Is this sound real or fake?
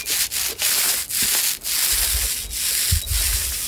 real